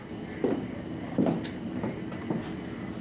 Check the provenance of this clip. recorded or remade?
recorded